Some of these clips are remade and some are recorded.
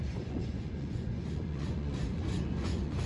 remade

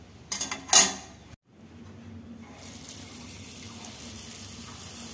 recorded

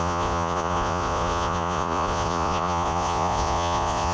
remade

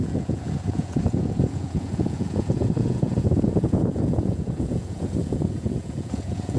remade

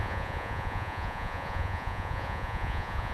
remade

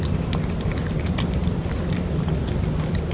recorded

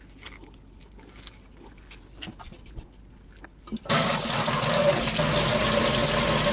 recorded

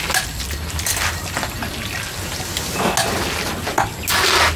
recorded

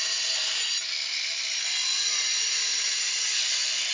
recorded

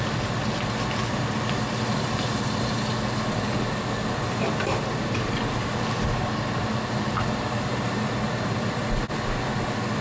recorded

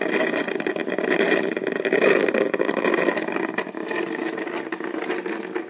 recorded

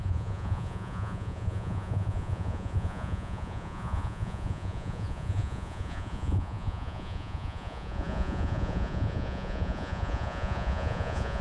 remade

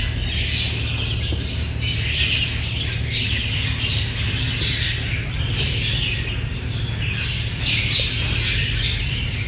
recorded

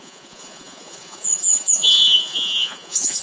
remade